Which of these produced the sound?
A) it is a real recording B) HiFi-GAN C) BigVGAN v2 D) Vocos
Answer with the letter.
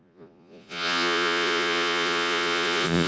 D